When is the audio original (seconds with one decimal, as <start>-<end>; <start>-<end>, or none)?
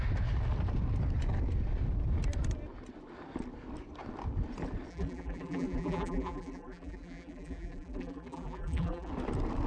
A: 0.0-4.9; 9.1-9.7